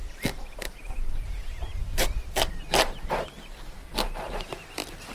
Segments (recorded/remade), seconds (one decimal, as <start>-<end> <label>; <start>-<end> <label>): 0.0-3.1 remade; 3.1-5.1 recorded